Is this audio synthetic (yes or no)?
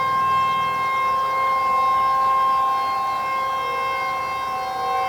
no